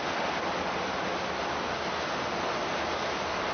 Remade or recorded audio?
recorded